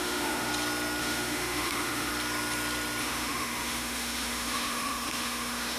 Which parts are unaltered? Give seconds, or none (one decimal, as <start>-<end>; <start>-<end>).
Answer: 0.5-1.0; 2.1-3.0